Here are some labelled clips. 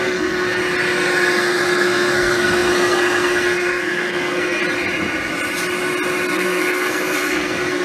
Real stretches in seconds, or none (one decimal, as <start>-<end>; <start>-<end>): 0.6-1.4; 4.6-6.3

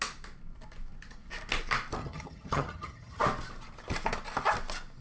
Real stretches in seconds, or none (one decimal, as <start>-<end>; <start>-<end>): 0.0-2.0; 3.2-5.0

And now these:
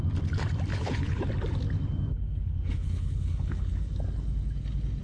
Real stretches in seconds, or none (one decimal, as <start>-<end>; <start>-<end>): 0.0-0.7; 1.2-2.1; 3.9-5.0

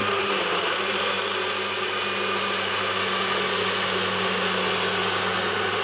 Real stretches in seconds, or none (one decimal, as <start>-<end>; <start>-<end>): 0.0-5.8

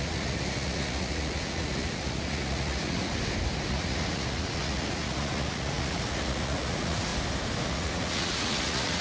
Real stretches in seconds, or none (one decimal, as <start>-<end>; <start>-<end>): 3.2-3.7; 7.1-7.6

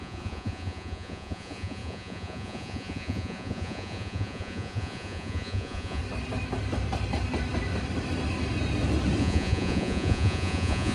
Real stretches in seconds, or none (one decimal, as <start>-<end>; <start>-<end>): 6.0-9.2

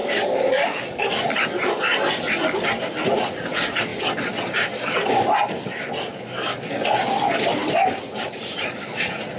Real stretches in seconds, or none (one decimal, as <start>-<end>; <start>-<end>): 1.3-6.1; 6.7-9.4